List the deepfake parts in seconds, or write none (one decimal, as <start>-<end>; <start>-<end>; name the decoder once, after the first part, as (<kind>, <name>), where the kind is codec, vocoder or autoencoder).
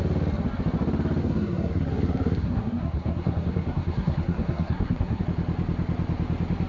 1.2-5.2 (codec, SNAC)